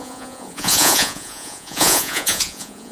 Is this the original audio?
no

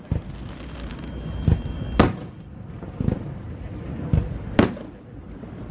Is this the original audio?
yes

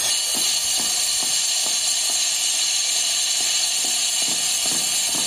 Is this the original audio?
yes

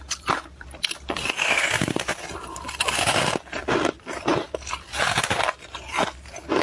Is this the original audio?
no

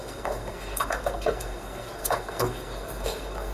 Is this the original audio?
no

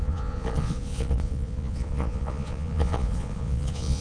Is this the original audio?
no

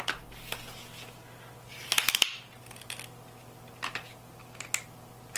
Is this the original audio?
yes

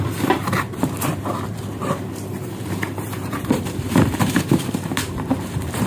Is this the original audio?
no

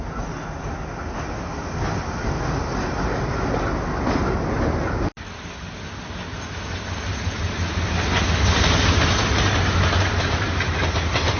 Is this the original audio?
yes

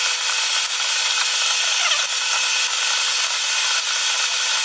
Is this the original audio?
yes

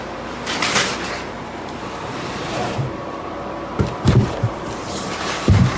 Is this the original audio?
no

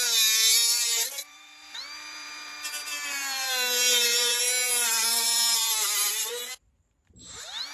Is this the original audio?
no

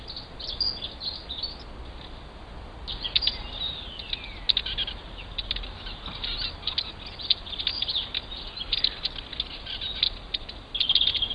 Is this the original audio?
yes